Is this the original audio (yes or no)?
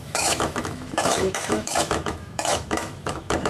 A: no